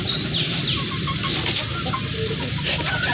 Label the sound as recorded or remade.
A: recorded